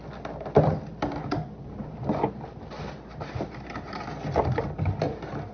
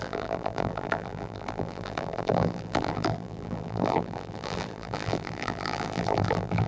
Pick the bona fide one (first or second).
first